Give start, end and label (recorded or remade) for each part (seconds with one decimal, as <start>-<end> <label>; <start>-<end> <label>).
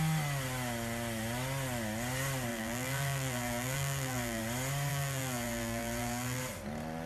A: 0.0-2.5 recorded; 2.5-4.4 remade; 4.4-4.9 recorded; 4.9-6.4 remade; 6.4-7.1 recorded